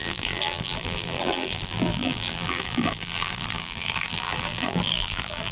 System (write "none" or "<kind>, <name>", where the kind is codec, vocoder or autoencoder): vocoder, BigVGAN v2